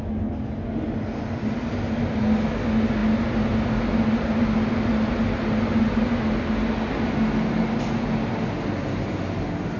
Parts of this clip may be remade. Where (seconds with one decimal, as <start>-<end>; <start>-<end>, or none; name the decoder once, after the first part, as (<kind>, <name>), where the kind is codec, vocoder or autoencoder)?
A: none